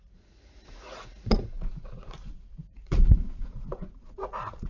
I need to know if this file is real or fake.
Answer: fake